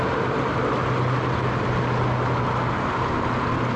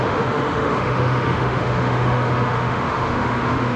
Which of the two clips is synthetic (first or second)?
second